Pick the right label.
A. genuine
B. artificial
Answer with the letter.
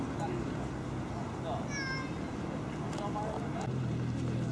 A